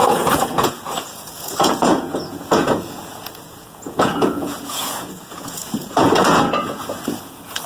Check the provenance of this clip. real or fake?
fake